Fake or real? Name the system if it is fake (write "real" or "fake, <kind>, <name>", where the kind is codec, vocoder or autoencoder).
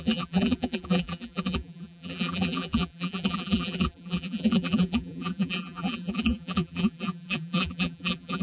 fake, vocoder, BigVGAN v2